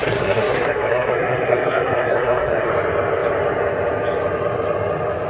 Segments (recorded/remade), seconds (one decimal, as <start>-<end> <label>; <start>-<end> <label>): 0.0-2.7 remade; 2.7-5.3 recorded